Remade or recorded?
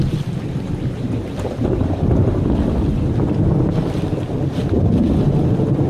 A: recorded